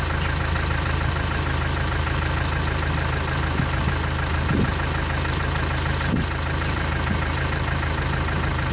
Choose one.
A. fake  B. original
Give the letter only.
B